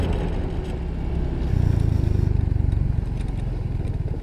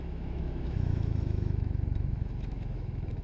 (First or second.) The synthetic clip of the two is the second